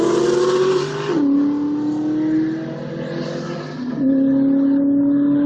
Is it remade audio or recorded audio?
recorded